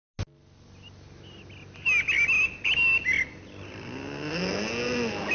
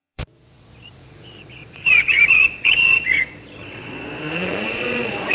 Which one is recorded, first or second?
first